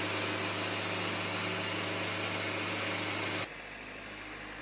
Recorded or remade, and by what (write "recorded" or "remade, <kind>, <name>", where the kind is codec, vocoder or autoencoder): recorded